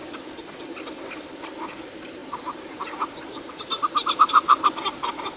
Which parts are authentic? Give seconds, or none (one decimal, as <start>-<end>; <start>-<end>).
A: 0.0-2.2; 2.8-5.4